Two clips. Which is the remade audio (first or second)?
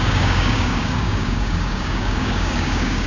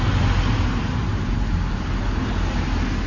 first